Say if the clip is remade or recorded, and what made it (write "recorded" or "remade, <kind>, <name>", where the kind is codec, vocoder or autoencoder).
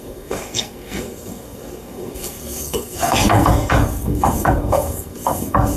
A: remade, codec, SNAC